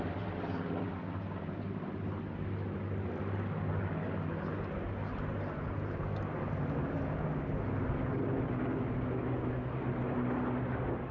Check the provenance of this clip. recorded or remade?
recorded